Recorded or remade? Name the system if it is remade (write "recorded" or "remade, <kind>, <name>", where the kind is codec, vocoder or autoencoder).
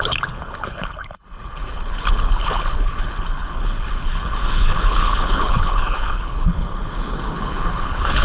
remade, codec, HILCodec